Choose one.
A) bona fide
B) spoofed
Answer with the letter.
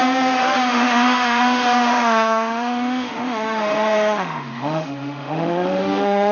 B